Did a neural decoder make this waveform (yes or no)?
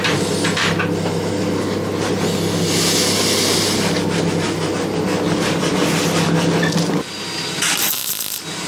no